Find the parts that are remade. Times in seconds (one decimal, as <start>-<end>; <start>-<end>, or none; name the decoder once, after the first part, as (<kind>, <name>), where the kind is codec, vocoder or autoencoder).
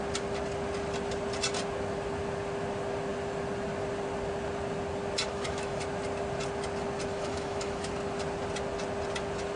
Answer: 5.3-5.8 (autoencoder, DAC-VAE); 7.1-7.9